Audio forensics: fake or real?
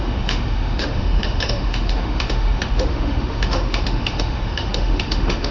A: fake